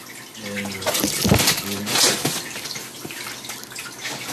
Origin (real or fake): real